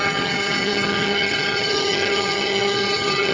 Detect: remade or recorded remade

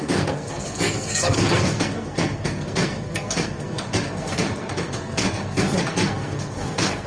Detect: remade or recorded remade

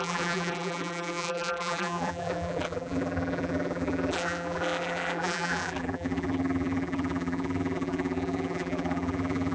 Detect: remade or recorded remade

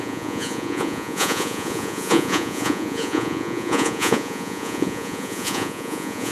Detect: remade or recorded remade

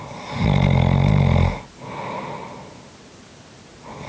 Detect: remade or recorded recorded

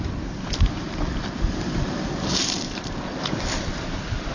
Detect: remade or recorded remade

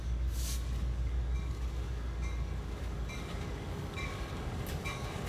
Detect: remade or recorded remade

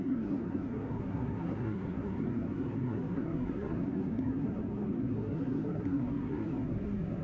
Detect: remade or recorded remade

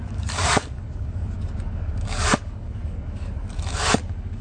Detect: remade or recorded remade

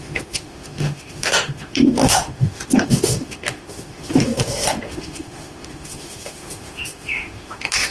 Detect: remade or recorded remade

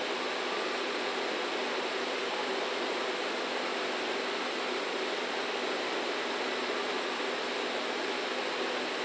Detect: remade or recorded recorded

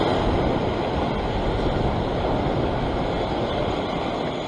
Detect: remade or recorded recorded